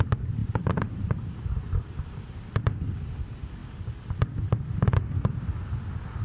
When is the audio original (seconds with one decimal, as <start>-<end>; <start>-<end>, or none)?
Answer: 0.0-6.2